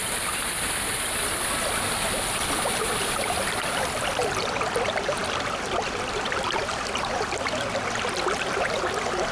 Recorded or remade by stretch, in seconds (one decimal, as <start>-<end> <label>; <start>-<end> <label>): 0.0-9.3 recorded